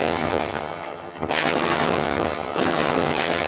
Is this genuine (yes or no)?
no